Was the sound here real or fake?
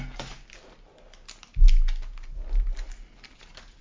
real